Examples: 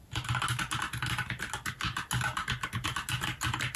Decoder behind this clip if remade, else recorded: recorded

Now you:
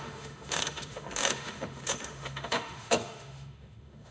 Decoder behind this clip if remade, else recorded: remade, autoencoder, DAC-VAE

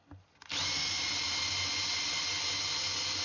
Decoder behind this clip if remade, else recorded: recorded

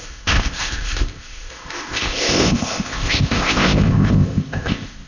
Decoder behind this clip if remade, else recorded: remade, codec, ZipCodec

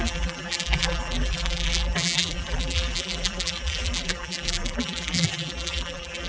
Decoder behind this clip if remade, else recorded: remade, vocoder, BigVGAN v2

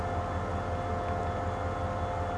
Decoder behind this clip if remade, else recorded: recorded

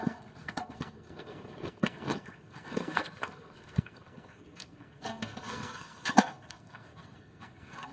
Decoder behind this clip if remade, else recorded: remade, codec, SNAC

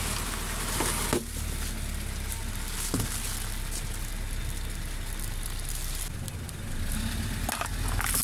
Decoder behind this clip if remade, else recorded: recorded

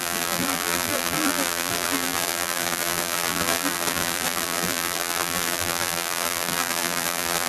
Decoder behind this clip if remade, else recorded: remade, vocoder, BigVGAN v2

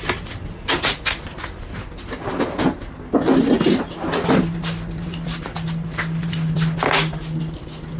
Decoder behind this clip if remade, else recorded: recorded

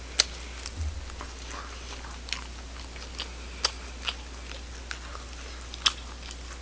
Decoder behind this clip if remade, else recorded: recorded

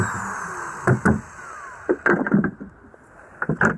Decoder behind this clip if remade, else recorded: recorded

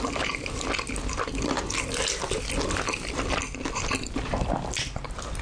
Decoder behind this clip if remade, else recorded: recorded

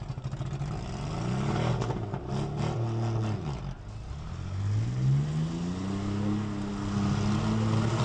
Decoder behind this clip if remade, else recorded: recorded